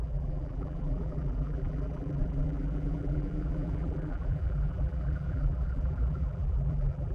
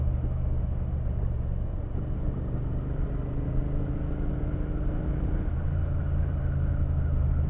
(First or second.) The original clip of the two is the second